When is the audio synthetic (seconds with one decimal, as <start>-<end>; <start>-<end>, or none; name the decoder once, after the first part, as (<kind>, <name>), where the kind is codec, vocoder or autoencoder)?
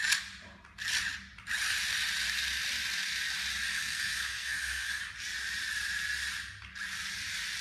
3.7-5.0 (codec, SNAC)